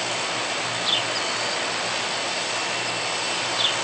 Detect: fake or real real